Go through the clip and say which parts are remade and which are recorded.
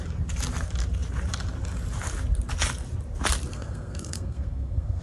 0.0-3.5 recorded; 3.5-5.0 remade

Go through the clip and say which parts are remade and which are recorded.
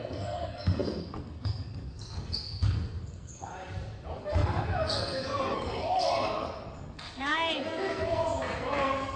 0.0-3.5 remade; 3.5-4.2 recorded; 4.2-9.2 remade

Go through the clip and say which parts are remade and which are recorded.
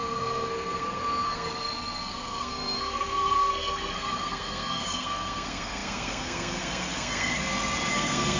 0.0-7.4 remade; 7.4-7.9 recorded; 7.9-8.4 remade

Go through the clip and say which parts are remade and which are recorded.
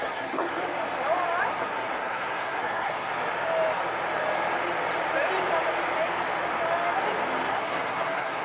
0.0-0.5 remade; 0.5-1.5 recorded; 1.5-3.1 remade; 3.1-7.5 recorded; 7.5-8.4 remade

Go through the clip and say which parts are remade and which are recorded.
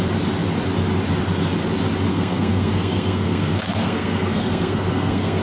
0.0-2.1 recorded; 2.1-5.4 remade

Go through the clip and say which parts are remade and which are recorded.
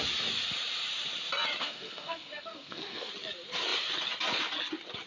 0.0-1.6 recorded; 1.6-3.1 remade; 3.1-5.1 recorded